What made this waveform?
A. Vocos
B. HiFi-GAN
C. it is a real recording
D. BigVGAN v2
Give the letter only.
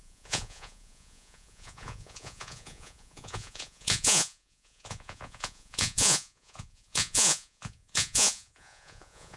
A